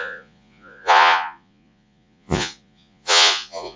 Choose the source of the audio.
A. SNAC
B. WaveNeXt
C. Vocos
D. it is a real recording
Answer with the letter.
C